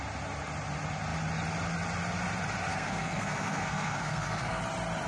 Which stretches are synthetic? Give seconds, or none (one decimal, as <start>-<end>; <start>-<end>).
2.7-4.6